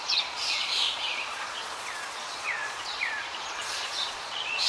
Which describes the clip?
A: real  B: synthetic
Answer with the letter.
B